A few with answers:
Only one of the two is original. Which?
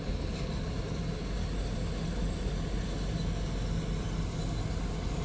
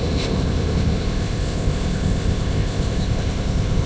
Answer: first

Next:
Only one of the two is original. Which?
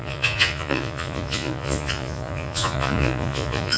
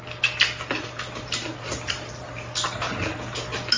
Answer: second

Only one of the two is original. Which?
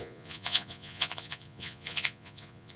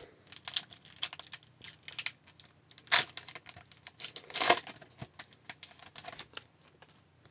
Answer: second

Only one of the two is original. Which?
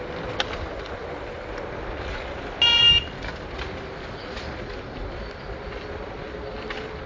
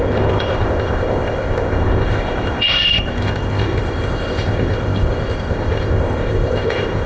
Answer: first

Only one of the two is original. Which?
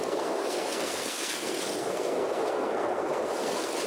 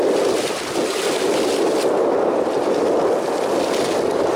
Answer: second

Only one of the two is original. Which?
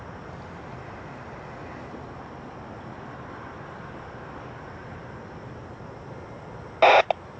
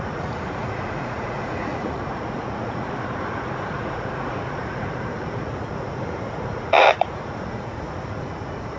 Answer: first